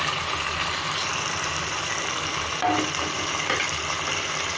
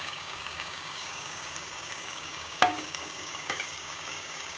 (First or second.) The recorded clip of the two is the first